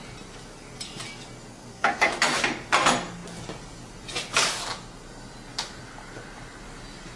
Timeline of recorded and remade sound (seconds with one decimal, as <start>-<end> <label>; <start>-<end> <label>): 0.0-1.5 recorded; 1.5-2.1 remade; 2.1-7.2 recorded